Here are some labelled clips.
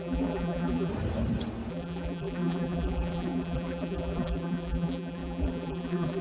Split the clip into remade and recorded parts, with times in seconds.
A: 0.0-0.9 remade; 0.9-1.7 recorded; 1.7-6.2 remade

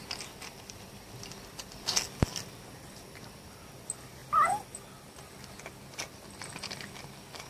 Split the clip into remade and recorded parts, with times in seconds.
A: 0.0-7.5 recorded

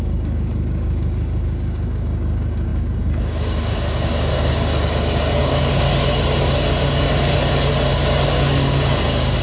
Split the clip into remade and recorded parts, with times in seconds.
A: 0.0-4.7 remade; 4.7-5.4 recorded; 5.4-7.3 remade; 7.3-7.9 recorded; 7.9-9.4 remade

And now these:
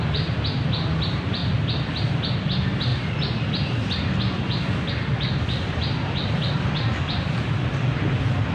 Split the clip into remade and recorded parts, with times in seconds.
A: 0.0-8.5 remade